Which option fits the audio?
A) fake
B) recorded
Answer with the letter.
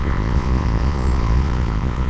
A